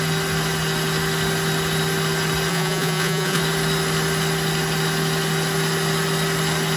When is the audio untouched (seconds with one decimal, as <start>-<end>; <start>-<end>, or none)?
0.0-2.5; 3.4-6.8